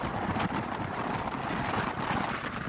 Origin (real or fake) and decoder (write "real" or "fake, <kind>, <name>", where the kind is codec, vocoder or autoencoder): real